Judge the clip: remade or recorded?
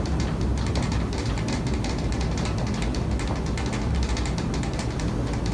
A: recorded